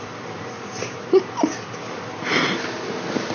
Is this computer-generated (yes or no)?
yes